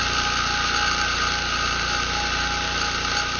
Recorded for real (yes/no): yes